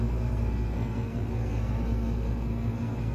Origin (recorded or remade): remade